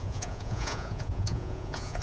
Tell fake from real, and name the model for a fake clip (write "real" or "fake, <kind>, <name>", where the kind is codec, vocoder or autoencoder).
fake, vocoder, Vocos